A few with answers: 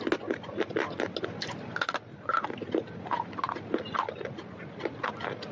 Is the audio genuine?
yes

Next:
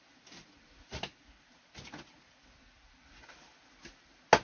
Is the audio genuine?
yes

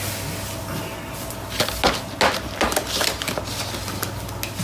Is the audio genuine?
yes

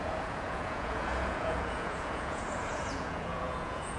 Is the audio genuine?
no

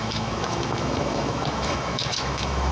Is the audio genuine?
no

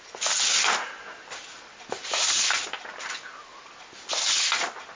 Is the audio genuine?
yes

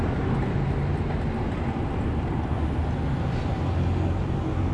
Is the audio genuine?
yes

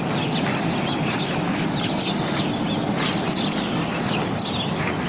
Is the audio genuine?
yes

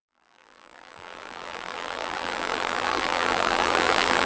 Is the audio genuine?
no